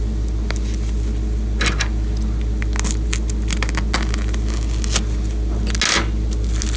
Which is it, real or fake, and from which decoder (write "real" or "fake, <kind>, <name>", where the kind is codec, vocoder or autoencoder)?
real